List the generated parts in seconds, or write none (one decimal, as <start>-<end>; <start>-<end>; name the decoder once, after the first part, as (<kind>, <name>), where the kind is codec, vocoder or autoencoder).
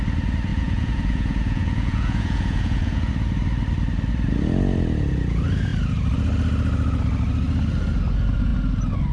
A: 0.5-3.1 (vocoder, Vocos)